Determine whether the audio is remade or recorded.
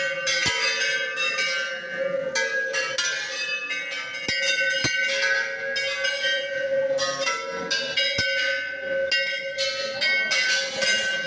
recorded